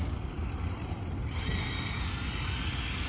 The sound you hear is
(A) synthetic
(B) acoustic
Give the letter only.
B